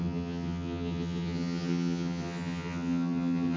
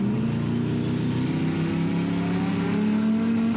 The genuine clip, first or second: second